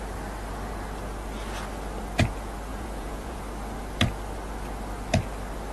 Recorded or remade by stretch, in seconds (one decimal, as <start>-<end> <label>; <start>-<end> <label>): 0.0-2.7 recorded; 2.7-3.4 remade; 3.4-5.7 recorded